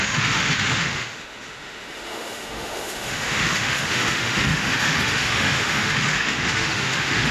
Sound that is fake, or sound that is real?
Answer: fake